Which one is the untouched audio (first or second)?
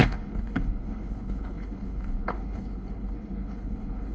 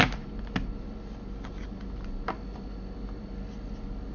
second